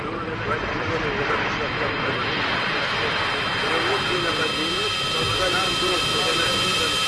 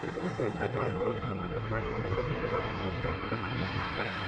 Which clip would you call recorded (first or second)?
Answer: first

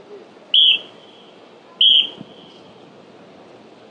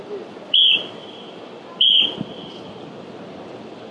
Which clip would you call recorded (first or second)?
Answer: first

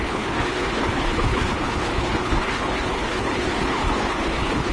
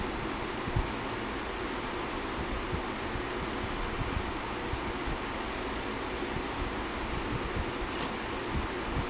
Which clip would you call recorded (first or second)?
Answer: second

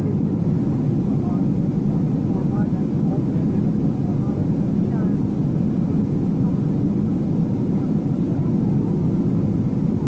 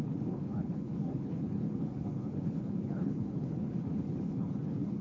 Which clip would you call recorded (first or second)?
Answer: first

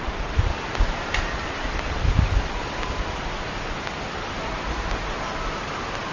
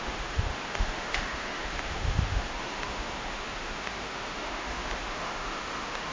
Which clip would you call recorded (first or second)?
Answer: first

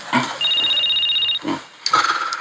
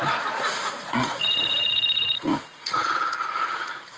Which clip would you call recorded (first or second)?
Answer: first